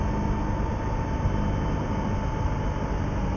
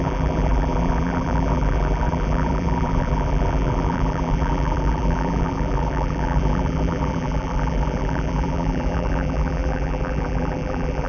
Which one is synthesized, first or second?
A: second